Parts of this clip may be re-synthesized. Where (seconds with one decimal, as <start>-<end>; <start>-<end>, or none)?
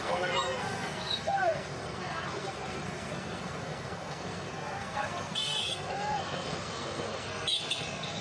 0.0-8.2